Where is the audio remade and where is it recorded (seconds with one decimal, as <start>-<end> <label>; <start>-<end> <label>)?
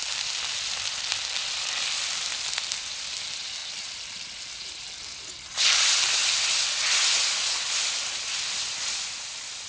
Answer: 0.0-9.7 recorded